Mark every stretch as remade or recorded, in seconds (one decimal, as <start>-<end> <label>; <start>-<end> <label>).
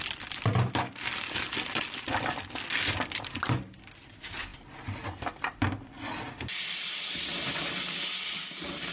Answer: 0.0-8.9 recorded